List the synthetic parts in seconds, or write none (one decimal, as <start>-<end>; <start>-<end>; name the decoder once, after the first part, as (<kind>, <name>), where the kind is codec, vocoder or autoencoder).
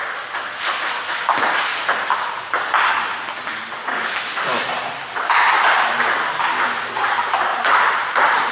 7.5-8.5 (vocoder, BigVGAN v2)